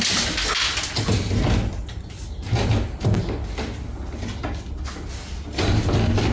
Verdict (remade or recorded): recorded